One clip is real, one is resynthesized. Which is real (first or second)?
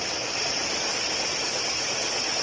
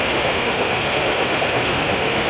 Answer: first